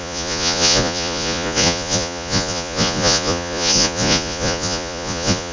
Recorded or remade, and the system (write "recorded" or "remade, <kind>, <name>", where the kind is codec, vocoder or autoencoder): remade, vocoder, Vocos